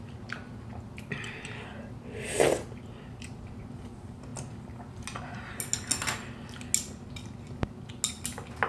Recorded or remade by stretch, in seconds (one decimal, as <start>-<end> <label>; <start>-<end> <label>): 0.0-8.7 recorded